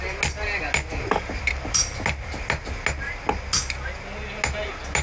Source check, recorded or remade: recorded